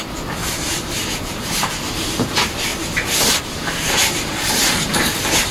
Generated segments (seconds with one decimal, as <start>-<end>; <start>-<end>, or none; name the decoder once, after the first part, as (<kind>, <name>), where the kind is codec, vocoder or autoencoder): 0.4-1.7 (vocoder, BigVGAN v2); 2.7-5.5